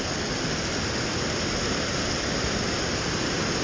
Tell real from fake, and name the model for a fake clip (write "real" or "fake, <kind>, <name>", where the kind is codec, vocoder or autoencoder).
real